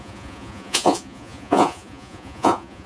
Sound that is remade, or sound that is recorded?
remade